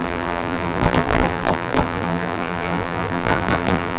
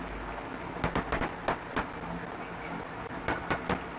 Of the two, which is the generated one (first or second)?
first